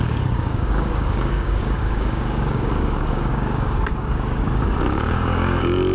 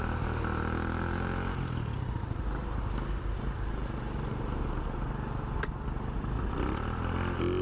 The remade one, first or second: first